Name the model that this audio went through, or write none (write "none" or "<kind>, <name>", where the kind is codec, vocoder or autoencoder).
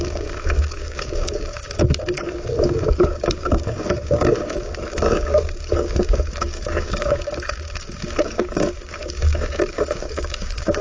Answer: codec, DAC